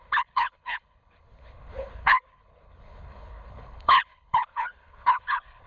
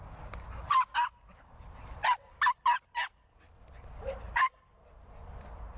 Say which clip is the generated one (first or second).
first